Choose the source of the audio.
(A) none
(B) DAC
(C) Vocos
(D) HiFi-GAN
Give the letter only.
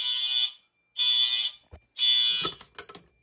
A